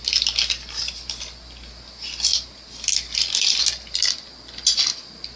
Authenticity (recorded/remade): recorded